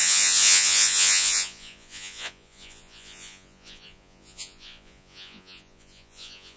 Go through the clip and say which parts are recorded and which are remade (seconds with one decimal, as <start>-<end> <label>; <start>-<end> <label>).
0.0-6.6 remade